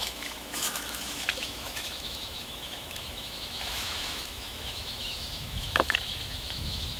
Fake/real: fake